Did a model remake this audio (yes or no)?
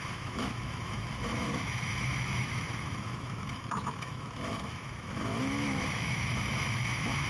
yes